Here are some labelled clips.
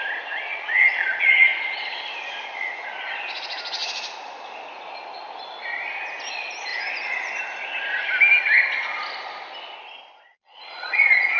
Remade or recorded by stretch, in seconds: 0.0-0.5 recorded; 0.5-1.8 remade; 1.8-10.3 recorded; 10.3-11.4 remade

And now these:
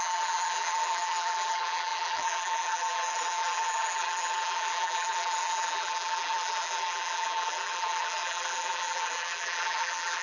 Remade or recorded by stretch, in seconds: 0.0-10.2 remade

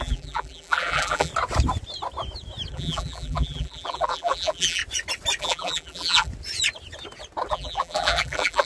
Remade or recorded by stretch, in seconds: 0.0-1.3 remade; 1.3-2.7 recorded; 2.7-4.8 remade; 4.8-5.4 recorded; 5.4-6.3 remade; 6.3-7.5 recorded; 7.5-8.6 remade

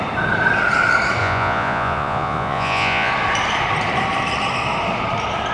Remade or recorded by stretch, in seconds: 0.0-1.2 recorded; 1.2-3.1 remade; 3.1-5.5 recorded

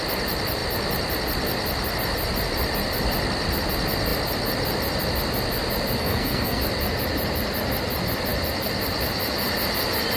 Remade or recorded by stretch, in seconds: 0.0-6.0 recorded; 6.0-6.6 remade; 6.6-10.2 recorded

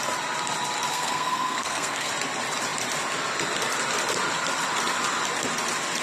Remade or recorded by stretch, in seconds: 0.0-0.9 recorded; 0.9-2.1 remade; 2.1-6.0 recorded